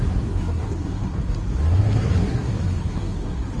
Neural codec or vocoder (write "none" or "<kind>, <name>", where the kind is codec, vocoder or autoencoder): codec, SNAC